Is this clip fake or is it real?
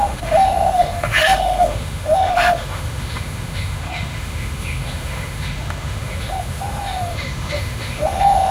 fake